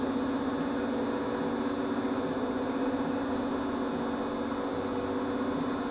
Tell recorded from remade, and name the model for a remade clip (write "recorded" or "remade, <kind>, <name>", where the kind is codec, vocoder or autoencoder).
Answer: recorded